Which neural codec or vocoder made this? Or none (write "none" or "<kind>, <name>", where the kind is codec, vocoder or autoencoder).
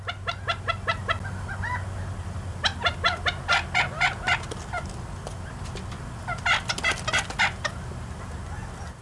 none